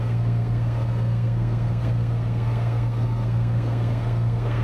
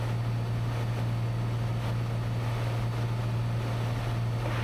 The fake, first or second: first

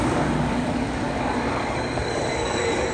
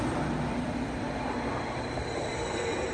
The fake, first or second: first